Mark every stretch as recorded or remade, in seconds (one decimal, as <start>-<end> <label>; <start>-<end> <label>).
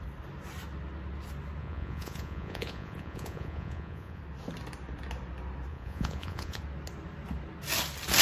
0.0-1.6 recorded; 1.6-4.2 remade; 4.2-5.7 recorded; 5.7-6.6 remade; 6.6-8.2 recorded